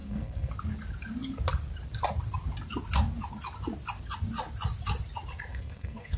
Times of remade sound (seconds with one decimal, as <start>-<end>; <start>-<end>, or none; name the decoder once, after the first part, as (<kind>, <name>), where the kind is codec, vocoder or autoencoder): 0.0-0.5 (codec, SNAC); 5.5-6.2